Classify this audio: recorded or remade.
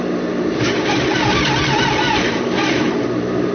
remade